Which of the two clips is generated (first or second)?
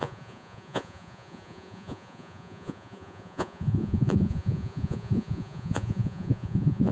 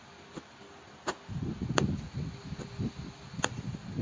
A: first